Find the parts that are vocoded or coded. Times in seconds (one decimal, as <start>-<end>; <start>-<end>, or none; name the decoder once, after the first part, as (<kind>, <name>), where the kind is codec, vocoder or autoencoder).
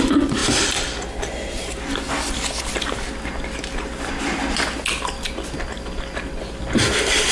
none